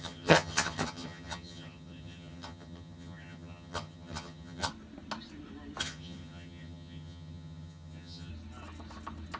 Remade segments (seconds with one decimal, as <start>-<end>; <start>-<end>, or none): 0.0-4.7; 5.8-8.3